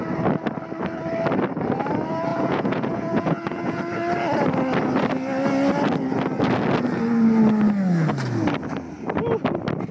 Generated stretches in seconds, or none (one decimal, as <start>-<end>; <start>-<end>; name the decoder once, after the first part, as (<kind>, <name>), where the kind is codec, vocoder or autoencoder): 2.3-3.8 (vocoder, Vocos)